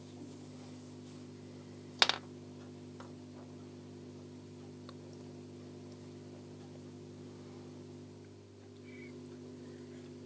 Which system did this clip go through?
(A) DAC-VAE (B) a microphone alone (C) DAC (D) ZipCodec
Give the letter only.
B